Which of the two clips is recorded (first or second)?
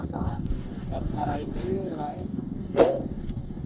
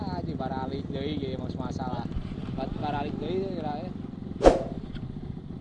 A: second